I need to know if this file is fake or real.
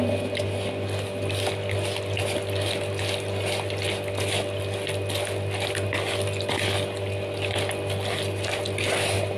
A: real